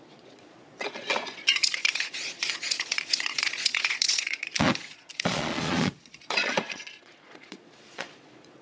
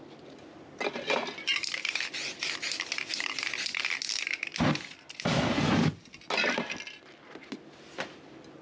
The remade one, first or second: first